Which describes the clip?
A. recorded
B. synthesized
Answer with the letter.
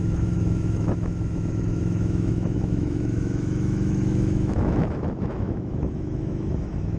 B